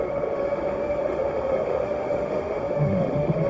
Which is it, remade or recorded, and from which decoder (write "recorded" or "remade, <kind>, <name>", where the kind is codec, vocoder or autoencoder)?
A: remade, autoencoder, DAC-VAE